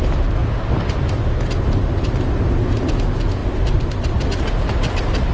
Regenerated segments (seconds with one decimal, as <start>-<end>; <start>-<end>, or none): 0.4-1.0; 3.4-3.9